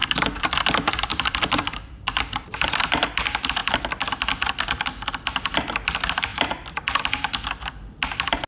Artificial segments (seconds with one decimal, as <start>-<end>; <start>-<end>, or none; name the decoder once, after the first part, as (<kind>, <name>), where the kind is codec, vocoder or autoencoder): 0.0-2.6 (vocoder, BigVGAN v2); 6.3-6.8